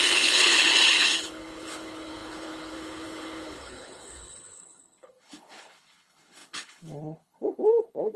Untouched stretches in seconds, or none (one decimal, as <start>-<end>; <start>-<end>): none